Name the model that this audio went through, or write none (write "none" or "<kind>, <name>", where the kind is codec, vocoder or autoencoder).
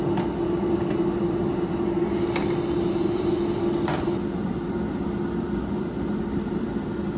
none